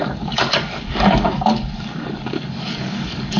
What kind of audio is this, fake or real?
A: fake